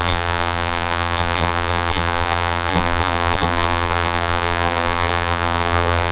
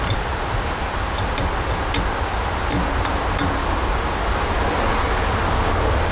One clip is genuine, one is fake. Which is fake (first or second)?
first